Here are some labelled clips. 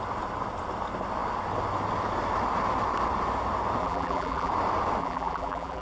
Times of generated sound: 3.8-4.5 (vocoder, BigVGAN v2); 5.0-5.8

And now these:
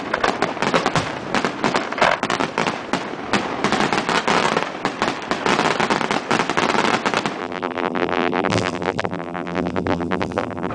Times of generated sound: 7.4-10.7 (vocoder, BigVGAN v2)

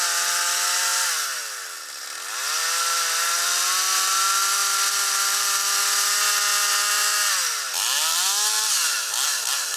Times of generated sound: 4.6-5.8 (vocoder, BigVGAN v2)